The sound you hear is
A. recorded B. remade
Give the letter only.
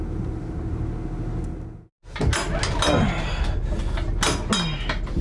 A